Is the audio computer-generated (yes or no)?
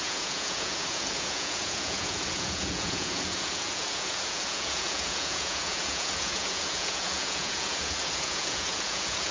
yes